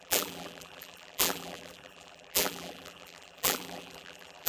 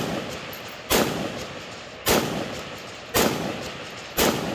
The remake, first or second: first